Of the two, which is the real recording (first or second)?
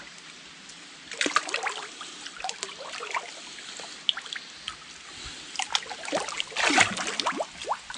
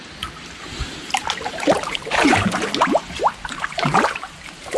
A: first